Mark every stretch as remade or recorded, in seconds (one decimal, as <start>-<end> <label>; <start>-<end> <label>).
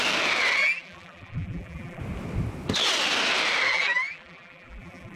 0.0-0.6 recorded; 0.6-2.0 remade; 2.0-3.7 recorded; 3.7-5.2 remade